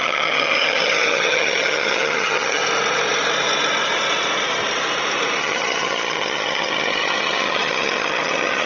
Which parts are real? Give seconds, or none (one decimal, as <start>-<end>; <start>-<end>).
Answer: 2.6-5.4